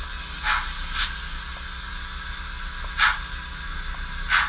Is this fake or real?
real